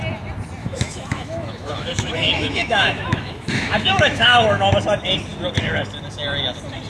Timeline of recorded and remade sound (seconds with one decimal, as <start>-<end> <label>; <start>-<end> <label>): 0.0-0.6 recorded; 0.6-4.7 remade; 4.7-6.9 recorded